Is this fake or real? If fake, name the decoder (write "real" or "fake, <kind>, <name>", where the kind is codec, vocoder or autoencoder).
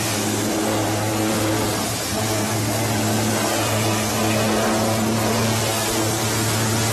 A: real